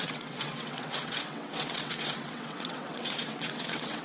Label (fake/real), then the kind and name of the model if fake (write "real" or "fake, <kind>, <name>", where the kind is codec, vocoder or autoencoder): fake, vocoder, WaveNeXt